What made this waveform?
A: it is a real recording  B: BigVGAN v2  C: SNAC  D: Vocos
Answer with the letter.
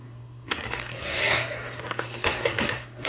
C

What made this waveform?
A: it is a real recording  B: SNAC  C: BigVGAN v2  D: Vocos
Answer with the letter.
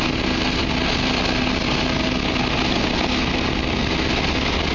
A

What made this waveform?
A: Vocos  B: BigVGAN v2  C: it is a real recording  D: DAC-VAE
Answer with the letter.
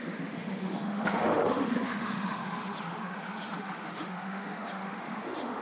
D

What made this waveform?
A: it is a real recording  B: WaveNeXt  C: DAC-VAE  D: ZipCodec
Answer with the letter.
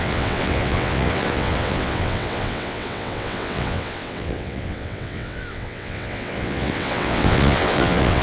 B